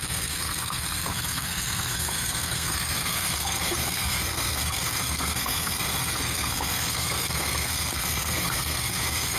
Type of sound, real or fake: fake